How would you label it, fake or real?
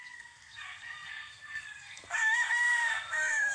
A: fake